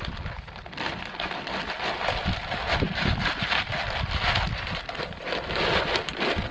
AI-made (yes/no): no